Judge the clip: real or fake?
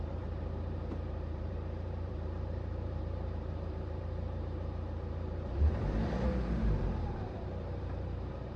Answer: fake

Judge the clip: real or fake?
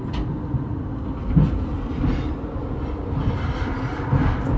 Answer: real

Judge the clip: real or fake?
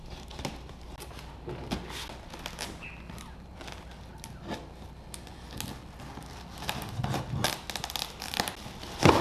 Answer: real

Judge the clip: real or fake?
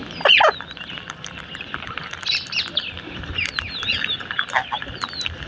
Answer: fake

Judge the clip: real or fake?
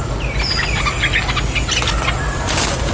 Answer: real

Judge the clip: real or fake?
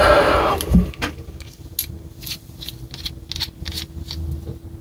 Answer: real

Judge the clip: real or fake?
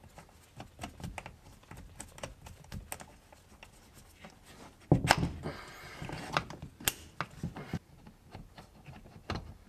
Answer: real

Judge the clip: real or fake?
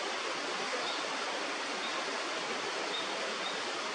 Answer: fake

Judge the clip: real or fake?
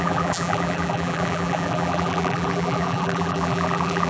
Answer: fake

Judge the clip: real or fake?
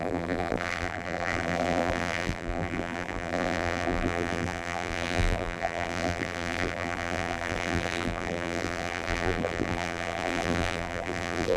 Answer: fake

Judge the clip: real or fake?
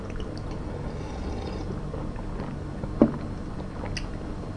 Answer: real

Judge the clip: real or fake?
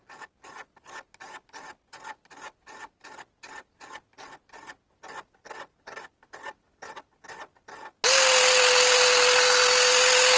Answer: real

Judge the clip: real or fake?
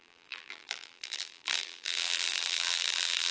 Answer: fake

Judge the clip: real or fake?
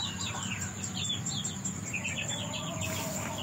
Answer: fake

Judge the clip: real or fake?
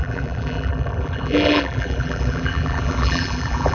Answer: fake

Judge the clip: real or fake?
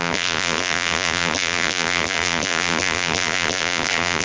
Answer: fake